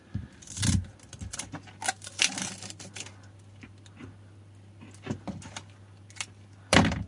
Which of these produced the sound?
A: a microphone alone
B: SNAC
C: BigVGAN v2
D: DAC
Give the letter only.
C